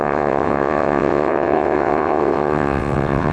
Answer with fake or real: fake